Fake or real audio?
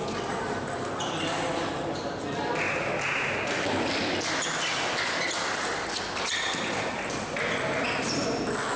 real